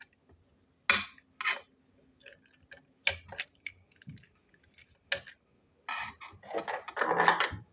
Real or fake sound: real